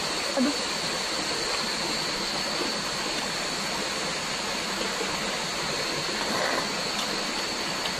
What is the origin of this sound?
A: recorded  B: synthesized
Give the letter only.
A